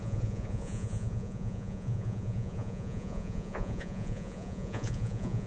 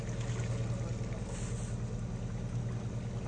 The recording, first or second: second